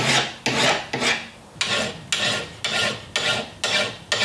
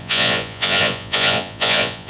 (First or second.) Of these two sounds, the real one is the first